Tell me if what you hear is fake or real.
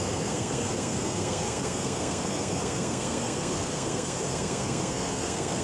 fake